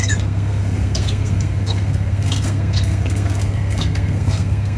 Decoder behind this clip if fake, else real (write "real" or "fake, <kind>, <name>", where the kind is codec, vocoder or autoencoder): fake, codec, SNAC